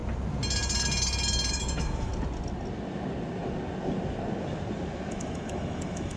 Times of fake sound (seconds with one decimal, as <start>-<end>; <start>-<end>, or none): 1.5-2.1; 5.1-6.2